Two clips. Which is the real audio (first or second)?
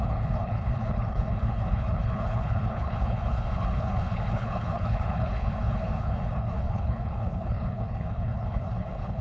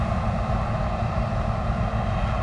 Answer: second